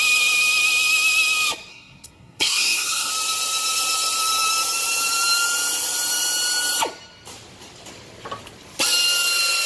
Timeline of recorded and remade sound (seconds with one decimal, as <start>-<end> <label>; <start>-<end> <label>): 0.0-1.7 recorded; 1.7-3.1 remade; 3.1-9.7 recorded